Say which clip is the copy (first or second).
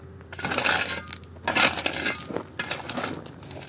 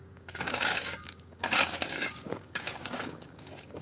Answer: second